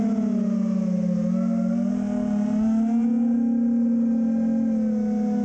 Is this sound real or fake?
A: real